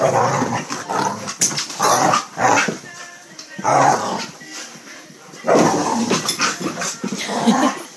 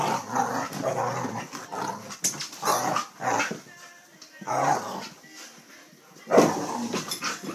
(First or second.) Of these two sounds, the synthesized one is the first